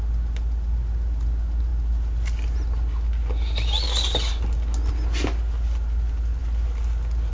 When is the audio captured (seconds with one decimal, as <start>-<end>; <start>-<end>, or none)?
0.0-7.3

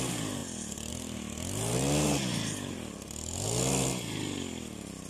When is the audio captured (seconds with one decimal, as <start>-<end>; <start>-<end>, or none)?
0.0-5.1

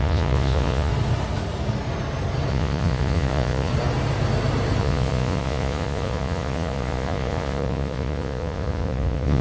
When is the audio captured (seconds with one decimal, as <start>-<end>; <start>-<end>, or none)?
0.9-2.5; 3.7-4.8

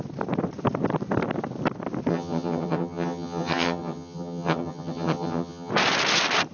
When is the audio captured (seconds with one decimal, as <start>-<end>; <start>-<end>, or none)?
0.0-2.1; 5.7-6.5

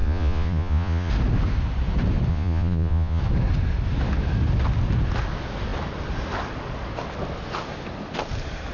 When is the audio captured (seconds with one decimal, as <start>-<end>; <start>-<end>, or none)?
1.1-2.3; 3.2-8.7

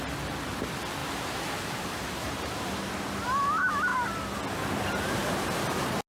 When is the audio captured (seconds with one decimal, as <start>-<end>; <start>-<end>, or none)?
0.0-1.0; 2.9-6.1

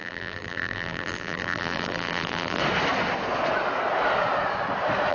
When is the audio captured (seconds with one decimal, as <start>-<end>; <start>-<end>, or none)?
2.6-5.1

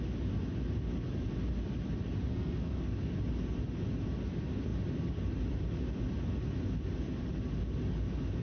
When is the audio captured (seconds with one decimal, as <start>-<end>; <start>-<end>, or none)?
0.0-2.3; 2.8-8.4